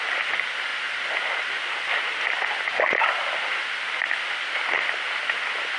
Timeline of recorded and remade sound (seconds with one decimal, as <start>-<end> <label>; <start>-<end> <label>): 0.0-5.8 recorded